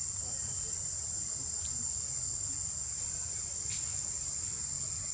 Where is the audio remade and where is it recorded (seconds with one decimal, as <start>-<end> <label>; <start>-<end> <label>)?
0.0-5.1 recorded